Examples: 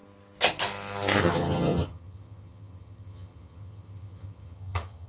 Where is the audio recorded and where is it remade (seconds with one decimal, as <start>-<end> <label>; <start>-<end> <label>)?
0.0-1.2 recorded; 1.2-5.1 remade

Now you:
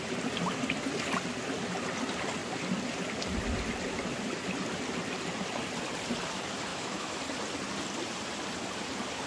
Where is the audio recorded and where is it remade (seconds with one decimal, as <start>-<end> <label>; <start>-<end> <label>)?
0.0-6.7 recorded; 6.7-7.2 remade; 7.2-9.3 recorded

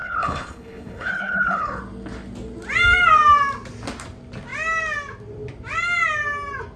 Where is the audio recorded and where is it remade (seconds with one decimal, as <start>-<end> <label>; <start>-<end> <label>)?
0.0-1.8 remade; 1.8-6.8 recorded

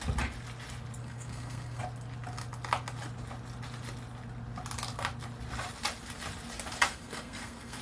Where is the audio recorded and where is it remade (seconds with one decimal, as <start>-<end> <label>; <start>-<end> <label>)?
0.0-1.0 recorded; 1.0-1.8 remade; 1.8-6.9 recorded; 6.9-7.8 remade

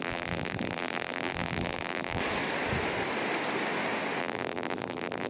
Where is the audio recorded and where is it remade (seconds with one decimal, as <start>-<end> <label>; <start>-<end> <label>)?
0.0-2.2 remade; 2.2-4.2 recorded; 4.2-5.3 remade

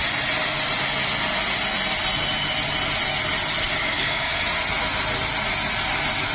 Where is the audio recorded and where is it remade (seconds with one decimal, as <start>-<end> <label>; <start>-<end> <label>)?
0.0-3.8 recorded; 3.8-4.4 remade; 4.4-6.3 recorded